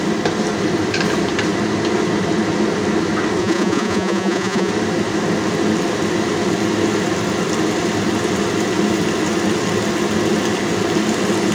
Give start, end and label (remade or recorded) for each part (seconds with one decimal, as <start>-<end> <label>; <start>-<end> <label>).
0.0-3.4 recorded; 3.4-4.7 remade; 4.7-11.5 recorded